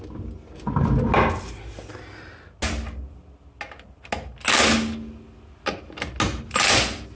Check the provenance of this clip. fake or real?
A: real